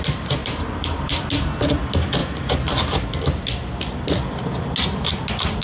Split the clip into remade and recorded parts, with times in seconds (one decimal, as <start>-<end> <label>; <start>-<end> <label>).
0.0-0.4 recorded; 0.4-1.2 remade; 1.2-2.2 recorded; 2.2-3.1 remade; 3.1-5.6 recorded

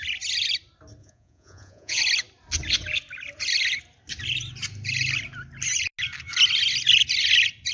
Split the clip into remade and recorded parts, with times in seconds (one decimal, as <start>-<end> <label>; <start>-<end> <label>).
0.0-1.0 recorded; 1.0-2.0 remade; 2.0-7.7 recorded